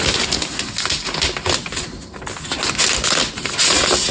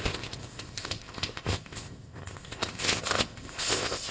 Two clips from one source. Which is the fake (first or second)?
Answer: second